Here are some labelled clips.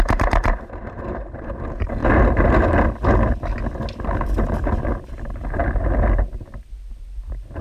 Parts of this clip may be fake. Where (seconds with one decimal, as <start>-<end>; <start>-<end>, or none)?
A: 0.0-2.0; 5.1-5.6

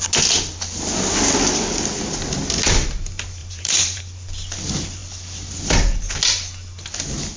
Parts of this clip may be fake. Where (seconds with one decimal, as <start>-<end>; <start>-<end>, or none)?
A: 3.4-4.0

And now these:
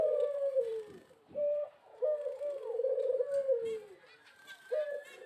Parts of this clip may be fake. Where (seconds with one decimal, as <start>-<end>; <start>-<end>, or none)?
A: 0.0-0.7; 1.2-2.6; 3.9-5.3